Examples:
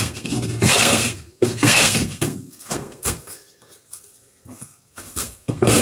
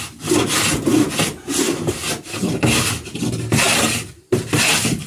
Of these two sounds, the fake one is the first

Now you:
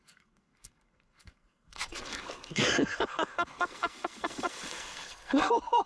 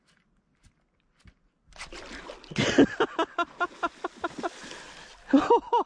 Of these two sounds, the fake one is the first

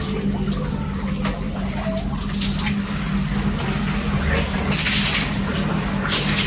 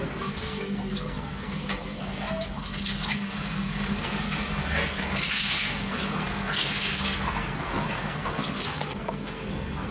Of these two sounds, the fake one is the second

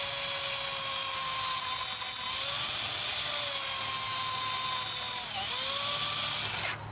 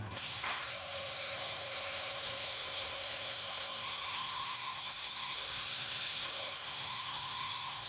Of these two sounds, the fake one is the second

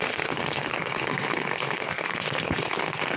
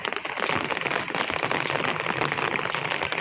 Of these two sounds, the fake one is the first